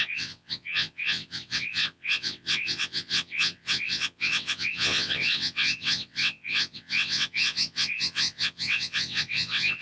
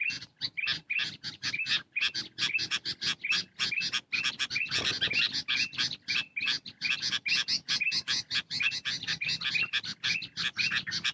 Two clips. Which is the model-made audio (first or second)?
first